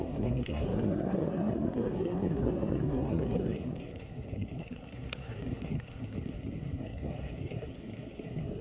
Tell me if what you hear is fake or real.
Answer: fake